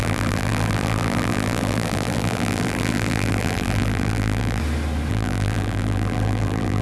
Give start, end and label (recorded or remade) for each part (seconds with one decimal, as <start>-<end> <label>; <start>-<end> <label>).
0.0-4.6 remade; 4.6-5.1 recorded; 5.1-6.8 remade